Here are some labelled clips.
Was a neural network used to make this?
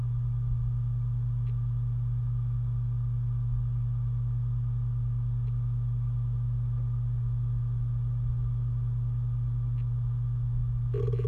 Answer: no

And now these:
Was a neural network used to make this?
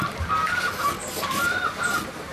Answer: no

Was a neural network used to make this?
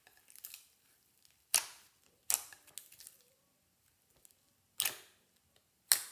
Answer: no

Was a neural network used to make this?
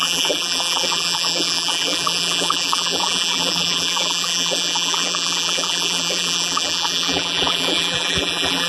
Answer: yes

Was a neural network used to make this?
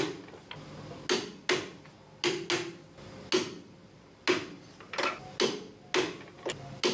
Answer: no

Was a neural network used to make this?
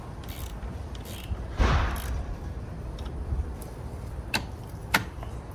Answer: yes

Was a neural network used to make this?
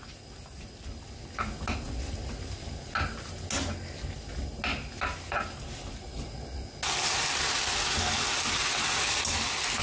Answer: no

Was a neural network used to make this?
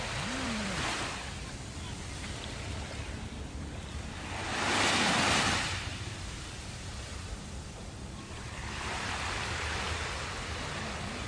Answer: yes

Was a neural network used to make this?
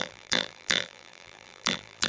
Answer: yes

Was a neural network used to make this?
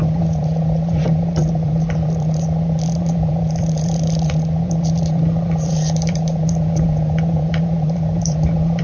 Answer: yes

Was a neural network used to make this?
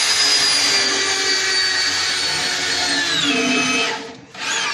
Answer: no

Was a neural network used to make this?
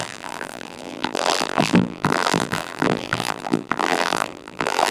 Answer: yes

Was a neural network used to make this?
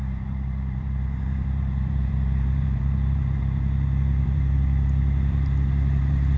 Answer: yes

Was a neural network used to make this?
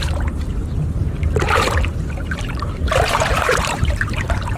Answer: yes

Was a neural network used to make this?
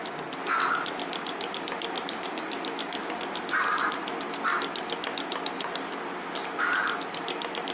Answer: no